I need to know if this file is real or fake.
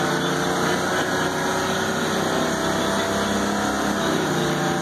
real